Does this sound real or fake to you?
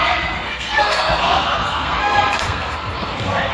fake